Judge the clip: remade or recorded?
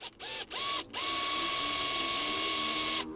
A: recorded